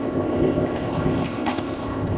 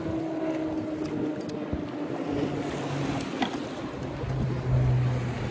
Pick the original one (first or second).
second